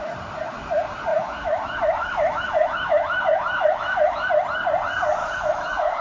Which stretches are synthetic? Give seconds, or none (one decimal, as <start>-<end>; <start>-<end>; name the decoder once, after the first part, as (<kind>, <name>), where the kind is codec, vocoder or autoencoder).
1.1-4.3 (autoencoder, DAC-VAE); 5.2-6.0